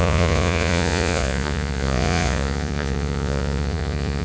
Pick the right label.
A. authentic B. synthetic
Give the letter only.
B